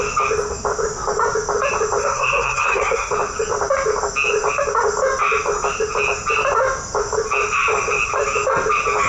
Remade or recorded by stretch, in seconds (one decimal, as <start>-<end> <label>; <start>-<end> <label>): 0.0-2.0 recorded; 2.0-3.1 remade; 3.1-9.1 recorded